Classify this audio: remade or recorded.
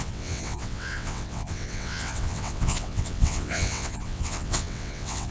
remade